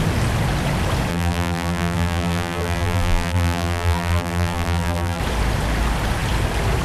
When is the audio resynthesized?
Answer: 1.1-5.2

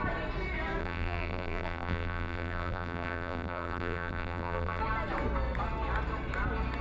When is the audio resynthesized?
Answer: 0.8-4.8

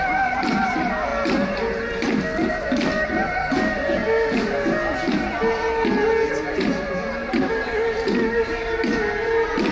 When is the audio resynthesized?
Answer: 0.0-1.1; 2.5-4.0; 6.3-9.7

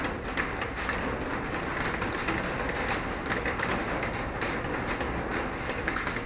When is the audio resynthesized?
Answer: none